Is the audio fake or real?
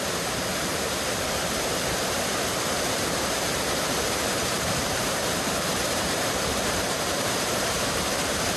fake